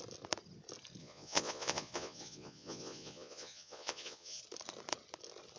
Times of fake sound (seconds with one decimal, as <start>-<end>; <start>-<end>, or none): 1.0-4.4